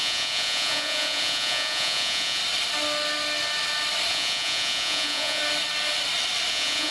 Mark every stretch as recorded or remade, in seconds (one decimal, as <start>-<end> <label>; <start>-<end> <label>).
0.0-2.4 remade; 2.4-4.1 recorded; 4.1-5.4 remade; 5.4-6.5 recorded; 6.5-6.9 remade